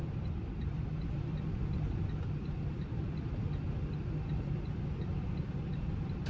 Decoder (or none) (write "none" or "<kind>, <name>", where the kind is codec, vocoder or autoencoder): vocoder, BigVGAN v2